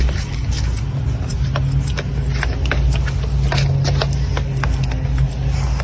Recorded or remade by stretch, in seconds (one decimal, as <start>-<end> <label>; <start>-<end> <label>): 0.0-5.8 recorded